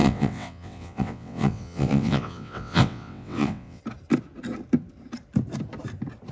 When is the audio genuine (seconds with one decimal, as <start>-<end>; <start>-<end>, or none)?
3.8-6.3